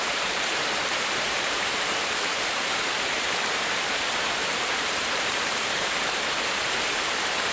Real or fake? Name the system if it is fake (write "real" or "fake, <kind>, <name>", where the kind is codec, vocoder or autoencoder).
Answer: fake, vocoder, BigVGAN v2